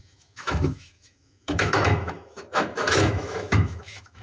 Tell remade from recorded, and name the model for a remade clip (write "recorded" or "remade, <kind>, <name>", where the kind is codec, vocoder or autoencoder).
remade, autoencoder, DAC-VAE